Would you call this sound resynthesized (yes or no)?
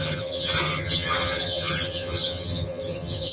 yes